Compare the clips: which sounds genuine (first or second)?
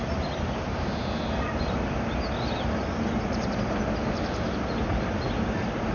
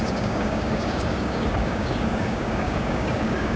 first